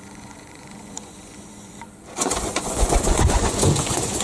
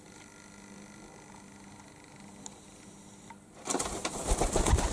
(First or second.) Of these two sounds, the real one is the second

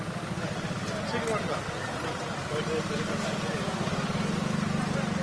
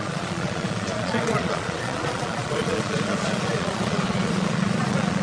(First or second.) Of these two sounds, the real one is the first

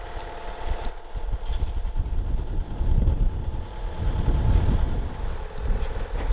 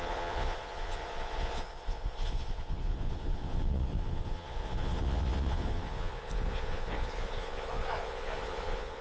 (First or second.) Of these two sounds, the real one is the first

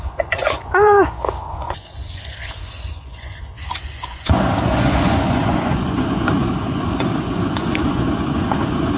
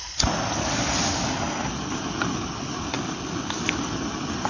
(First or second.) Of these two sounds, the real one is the second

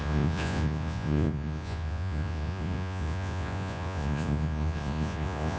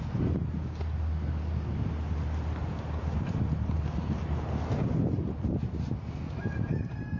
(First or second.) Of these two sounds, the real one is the second